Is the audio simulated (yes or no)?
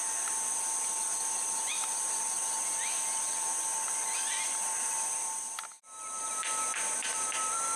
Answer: no